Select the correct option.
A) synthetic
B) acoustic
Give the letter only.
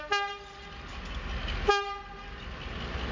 B